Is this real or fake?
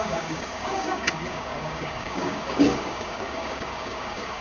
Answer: fake